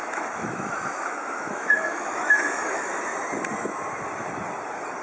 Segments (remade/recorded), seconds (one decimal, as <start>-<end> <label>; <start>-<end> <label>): 0.0-3.0 remade; 3.0-5.0 recorded